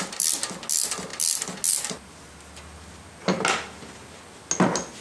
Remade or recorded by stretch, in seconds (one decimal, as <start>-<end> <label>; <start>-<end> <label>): 0.0-5.0 recorded